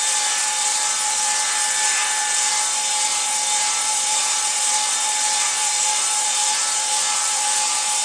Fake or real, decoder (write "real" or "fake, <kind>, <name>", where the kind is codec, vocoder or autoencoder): fake, vocoder, BigVGAN v2